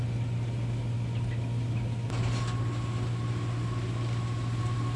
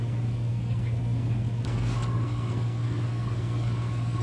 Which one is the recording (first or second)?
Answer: first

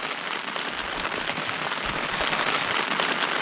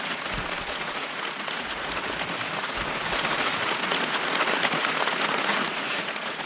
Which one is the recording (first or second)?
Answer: first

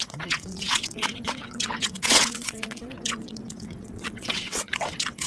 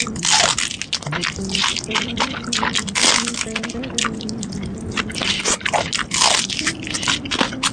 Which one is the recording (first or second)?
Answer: second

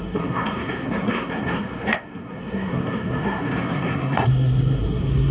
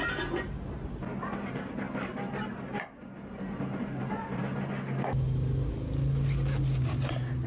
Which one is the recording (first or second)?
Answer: second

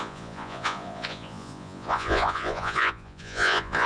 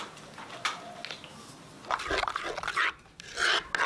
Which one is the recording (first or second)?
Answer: second